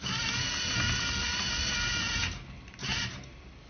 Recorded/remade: recorded